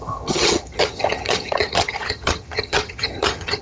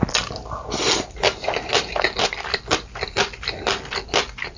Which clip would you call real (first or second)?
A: second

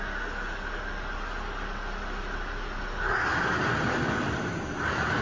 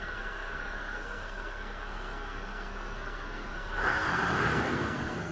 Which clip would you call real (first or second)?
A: first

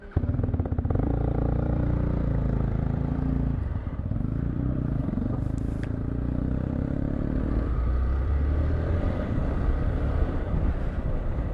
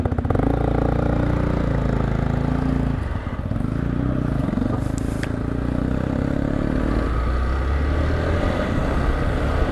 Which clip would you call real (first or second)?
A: second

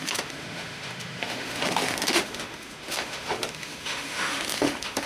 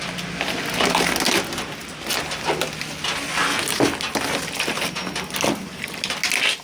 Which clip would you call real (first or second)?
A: second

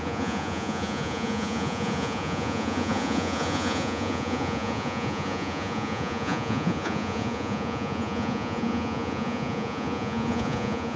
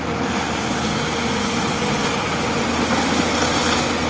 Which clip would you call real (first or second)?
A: second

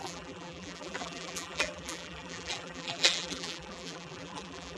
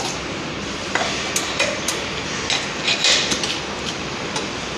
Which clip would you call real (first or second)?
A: second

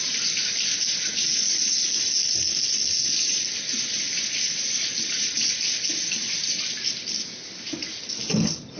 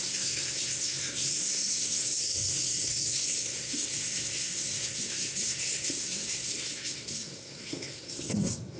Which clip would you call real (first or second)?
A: first